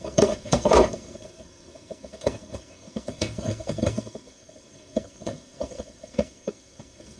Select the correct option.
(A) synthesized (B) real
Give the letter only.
A